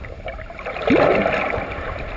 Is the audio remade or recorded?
recorded